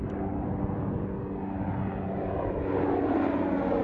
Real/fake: real